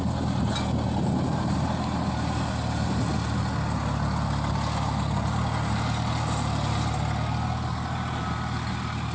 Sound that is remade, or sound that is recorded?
recorded